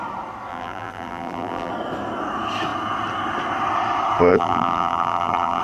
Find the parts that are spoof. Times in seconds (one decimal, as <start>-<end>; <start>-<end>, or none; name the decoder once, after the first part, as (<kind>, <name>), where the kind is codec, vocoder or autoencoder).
0.5-1.7 (vocoder, BigVGAN v2); 4.3-5.6